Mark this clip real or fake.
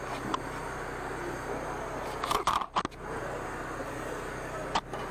real